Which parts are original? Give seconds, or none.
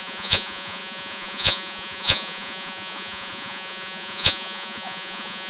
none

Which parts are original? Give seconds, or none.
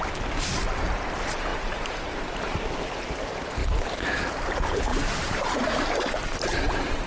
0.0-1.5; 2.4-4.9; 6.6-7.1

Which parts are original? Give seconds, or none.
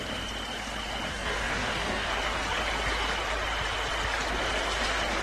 0.0-1.1; 2.1-5.2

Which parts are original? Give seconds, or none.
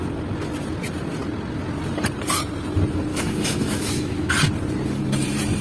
0.0-3.1; 4.3-5.6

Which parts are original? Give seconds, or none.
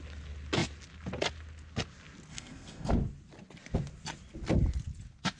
0.0-2.3; 2.9-5.4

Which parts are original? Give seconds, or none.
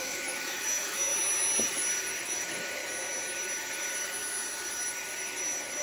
1.1-2.2; 2.8-5.8